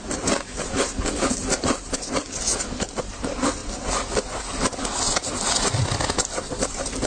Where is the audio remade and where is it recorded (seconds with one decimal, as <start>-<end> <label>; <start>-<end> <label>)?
0.0-7.1 recorded